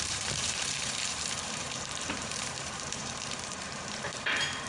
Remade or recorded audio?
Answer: remade